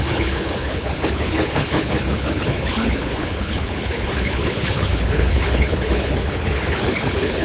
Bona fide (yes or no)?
no